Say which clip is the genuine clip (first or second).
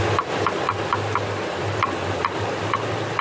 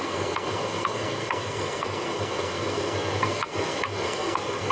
first